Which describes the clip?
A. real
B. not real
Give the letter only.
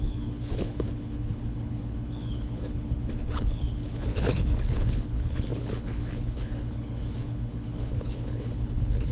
B